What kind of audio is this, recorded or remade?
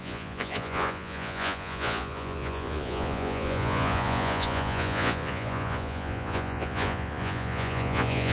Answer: remade